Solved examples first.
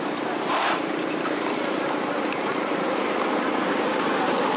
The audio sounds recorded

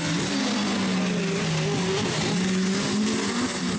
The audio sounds recorded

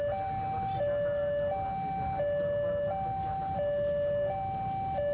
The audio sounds recorded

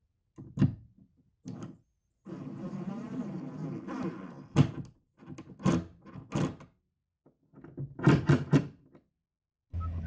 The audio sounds recorded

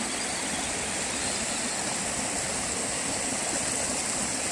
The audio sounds recorded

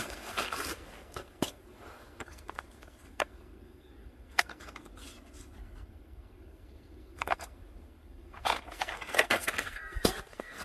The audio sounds remade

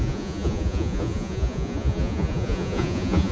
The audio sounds remade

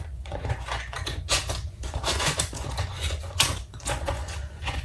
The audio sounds remade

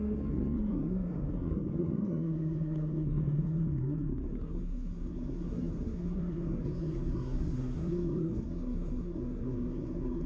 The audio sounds remade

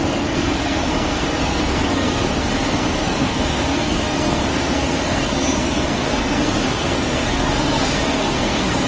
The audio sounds remade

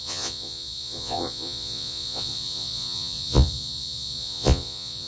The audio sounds remade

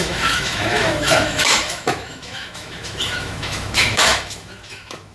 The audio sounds remade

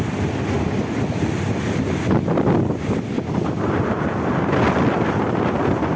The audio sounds recorded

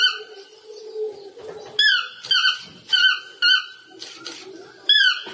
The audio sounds recorded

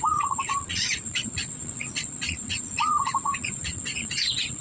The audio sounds remade